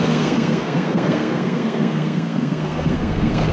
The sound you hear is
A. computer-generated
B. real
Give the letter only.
A